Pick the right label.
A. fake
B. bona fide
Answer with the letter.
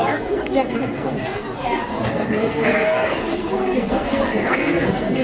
A